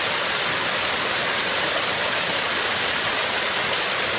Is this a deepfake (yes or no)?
yes